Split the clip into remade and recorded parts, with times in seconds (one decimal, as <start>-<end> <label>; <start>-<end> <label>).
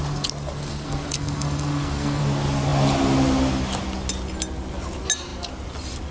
0.0-0.7 recorded; 0.7-2.2 remade; 2.2-6.1 recorded